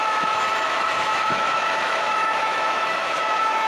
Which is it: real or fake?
fake